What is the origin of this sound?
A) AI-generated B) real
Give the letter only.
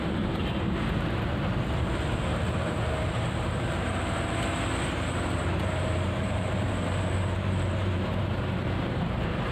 A